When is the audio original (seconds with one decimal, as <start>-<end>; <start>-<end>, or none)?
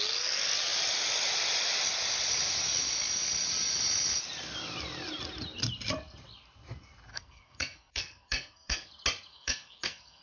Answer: 0.0-7.1; 8.9-9.3